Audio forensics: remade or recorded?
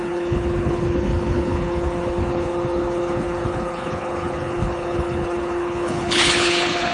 remade